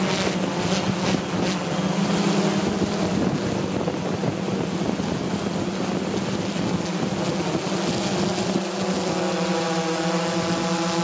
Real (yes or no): yes